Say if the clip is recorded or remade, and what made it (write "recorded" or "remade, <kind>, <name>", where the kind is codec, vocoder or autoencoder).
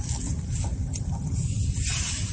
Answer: recorded